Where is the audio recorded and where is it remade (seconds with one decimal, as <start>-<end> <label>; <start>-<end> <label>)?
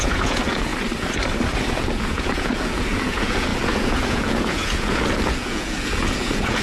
0.0-0.7 remade; 0.7-1.5 recorded; 1.5-6.6 remade